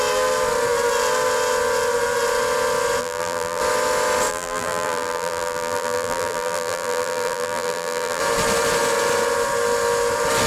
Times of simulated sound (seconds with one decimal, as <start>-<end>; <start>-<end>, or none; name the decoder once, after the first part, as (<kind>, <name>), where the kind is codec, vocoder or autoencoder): 3.0-3.6 (vocoder, BigVGAN v2); 4.3-8.2